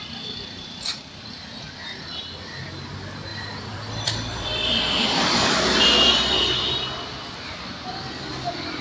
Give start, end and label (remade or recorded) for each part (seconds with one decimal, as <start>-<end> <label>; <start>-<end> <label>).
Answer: 0.0-3.3 recorded; 3.3-6.1 remade; 6.1-8.8 recorded

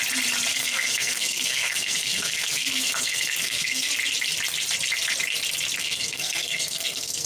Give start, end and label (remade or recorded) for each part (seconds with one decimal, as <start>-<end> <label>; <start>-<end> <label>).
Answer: 0.0-0.5 recorded; 0.5-3.9 remade; 3.9-5.8 recorded; 5.8-7.3 remade

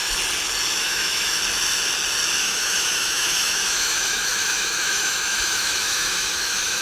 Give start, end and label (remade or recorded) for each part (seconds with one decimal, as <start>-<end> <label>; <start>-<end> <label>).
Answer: 0.0-0.8 recorded; 0.8-1.4 remade; 1.4-2.4 recorded; 2.4-6.8 remade

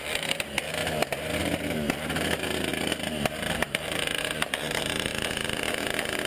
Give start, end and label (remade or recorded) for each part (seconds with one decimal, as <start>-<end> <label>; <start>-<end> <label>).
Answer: 0.0-0.8 remade; 0.8-1.4 recorded; 1.4-5.1 remade; 5.1-6.3 recorded

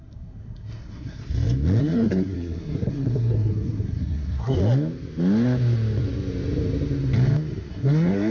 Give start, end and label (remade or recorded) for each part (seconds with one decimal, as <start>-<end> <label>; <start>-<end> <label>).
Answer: 0.0-1.2 remade; 1.2-1.8 recorded; 1.8-4.6 remade; 4.6-7.7 recorded; 7.7-8.3 remade

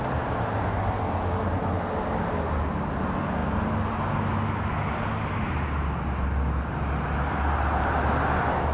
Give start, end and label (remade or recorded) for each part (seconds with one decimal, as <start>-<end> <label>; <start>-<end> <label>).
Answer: 0.0-8.7 recorded

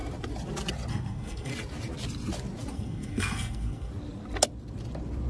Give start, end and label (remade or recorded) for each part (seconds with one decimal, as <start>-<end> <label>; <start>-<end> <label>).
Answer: 0.0-0.9 recorded; 0.9-1.5 remade; 1.5-2.7 recorded; 2.7-3.9 remade; 3.9-5.3 recorded

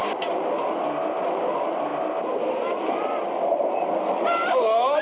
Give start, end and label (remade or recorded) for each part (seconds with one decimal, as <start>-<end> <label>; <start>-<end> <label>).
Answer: 0.0-5.0 recorded